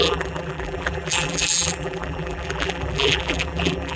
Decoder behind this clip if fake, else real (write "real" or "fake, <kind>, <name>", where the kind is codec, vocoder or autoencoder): fake, vocoder, BigVGAN v2